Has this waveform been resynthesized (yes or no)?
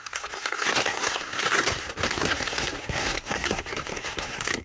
yes